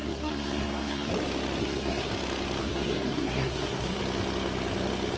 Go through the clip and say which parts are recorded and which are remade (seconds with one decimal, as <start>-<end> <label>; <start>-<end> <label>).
0.0-1.1 remade; 1.1-1.6 recorded; 1.6-2.1 remade; 2.1-2.6 recorded; 2.6-4.0 remade; 4.0-5.2 recorded